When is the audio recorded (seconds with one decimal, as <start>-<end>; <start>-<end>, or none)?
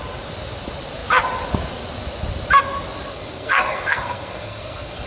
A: 0.0-3.1